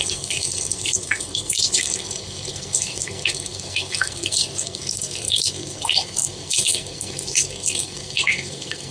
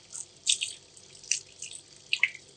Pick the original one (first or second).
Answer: second